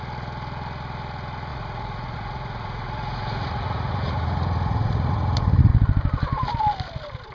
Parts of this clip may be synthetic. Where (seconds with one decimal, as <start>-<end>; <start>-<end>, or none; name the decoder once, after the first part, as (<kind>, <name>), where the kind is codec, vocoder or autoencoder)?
1.5-5.7 (vocoder, Vocos)